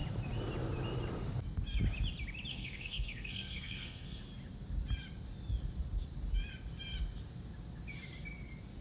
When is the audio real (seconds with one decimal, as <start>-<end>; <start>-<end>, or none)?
0.0-2.5; 4.2-8.8